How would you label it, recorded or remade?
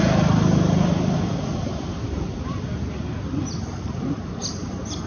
remade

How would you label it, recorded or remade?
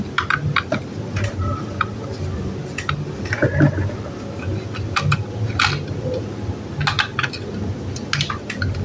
recorded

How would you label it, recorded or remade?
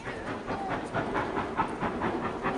remade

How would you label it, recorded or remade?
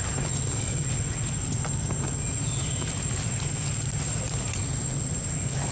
recorded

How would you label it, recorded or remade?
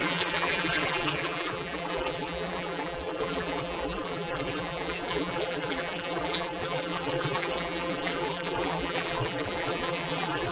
remade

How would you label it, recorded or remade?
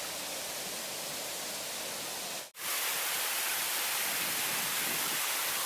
recorded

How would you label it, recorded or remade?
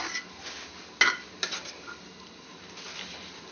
recorded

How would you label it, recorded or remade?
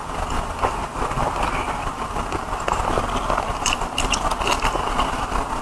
recorded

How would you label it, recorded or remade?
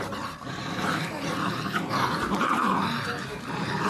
remade